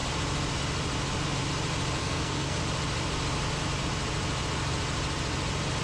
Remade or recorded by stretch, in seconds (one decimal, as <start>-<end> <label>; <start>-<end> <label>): 0.0-2.0 recorded; 2.0-2.6 remade; 2.6-5.8 recorded

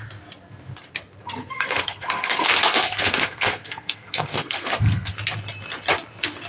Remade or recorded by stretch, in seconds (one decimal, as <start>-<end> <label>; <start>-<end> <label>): 0.0-1.2 recorded; 1.2-5.1 remade; 5.1-6.5 recorded

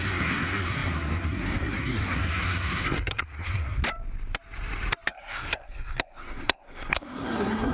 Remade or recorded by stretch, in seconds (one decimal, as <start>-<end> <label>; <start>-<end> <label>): 0.0-3.8 remade; 3.8-5.1 recorded; 5.1-7.7 remade

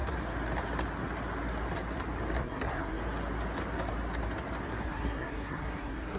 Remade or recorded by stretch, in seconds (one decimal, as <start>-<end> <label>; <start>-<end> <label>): 0.0-2.4 recorded; 2.4-3.0 remade; 3.0-4.8 recorded; 4.8-6.2 remade

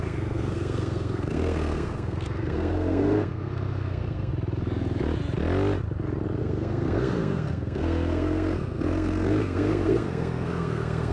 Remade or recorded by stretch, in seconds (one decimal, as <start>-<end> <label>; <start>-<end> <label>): 0.0-4.3 remade; 4.3-6.4 recorded; 6.4-11.1 remade

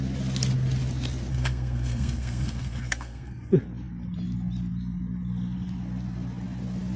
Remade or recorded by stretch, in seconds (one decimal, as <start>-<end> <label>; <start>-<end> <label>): 0.0-1.3 recorded; 1.3-3.5 remade; 3.5-7.0 recorded